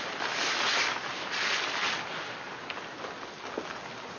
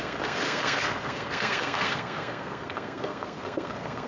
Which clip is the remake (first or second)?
second